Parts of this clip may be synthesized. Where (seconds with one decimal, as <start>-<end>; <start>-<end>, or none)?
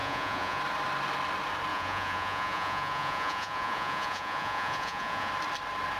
0.0-0.6; 1.7-5.3